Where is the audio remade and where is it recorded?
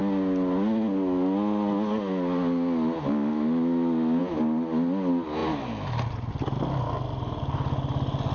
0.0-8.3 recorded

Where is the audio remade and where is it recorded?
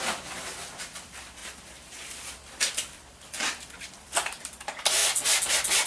0.0-5.0 remade; 5.0-5.9 recorded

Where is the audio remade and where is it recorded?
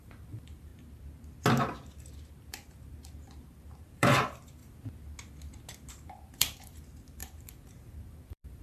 0.0-0.7 remade; 0.7-2.3 recorded; 2.3-4.6 remade; 4.6-5.9 recorded; 5.9-8.6 remade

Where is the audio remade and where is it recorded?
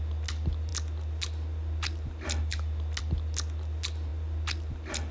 0.0-5.1 recorded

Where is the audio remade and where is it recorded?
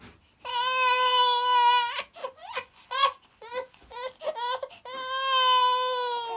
0.0-2.2 recorded; 2.2-4.0 remade; 4.0-6.4 recorded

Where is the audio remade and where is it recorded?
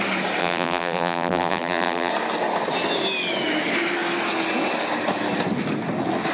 0.0-0.4 recorded; 0.4-2.1 remade; 2.1-6.3 recorded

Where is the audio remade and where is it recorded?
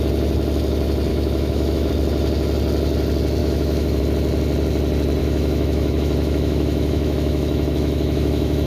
0.0-1.1 recorded; 1.1-1.9 remade; 1.9-3.4 recorded; 3.4-4.0 remade; 4.0-5.2 recorded; 5.2-8.7 remade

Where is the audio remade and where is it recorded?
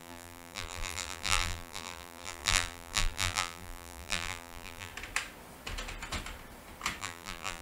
0.0-4.9 remade; 4.9-7.0 recorded; 7.0-7.6 remade